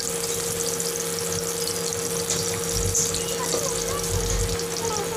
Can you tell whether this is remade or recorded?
recorded